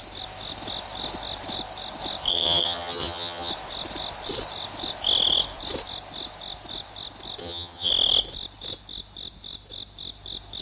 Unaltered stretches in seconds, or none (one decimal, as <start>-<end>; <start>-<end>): 0.0-2.3; 3.5-7.4; 7.9-10.6